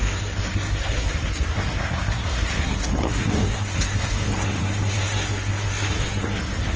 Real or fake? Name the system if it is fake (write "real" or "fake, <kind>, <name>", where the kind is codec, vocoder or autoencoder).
fake, codec, SNAC